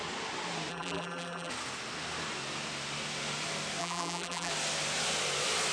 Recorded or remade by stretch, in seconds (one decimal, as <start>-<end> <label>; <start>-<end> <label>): 0.0-0.7 recorded; 0.7-1.5 remade; 1.5-3.8 recorded; 3.8-4.5 remade; 4.5-5.7 recorded